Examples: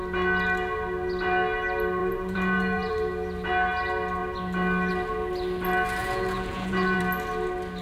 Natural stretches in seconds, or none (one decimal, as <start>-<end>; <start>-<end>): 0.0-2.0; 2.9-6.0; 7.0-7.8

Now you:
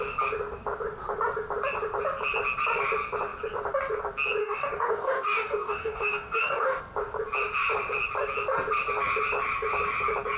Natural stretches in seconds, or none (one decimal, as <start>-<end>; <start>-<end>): 0.0-4.4; 6.8-10.4

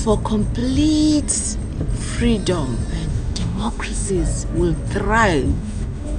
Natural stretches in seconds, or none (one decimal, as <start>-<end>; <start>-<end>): 0.0-3.1; 4.1-5.5